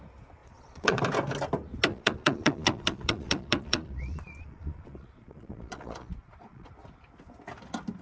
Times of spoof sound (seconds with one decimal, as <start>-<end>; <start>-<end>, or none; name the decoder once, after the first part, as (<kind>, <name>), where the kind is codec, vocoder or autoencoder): 0.4-1.0 (vocoder, Vocos); 1.9-6.7